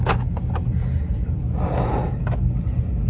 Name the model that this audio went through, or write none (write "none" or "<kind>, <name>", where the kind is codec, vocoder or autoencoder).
none